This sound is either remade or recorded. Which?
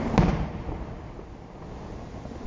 recorded